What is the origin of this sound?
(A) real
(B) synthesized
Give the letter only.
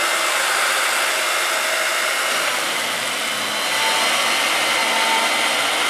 A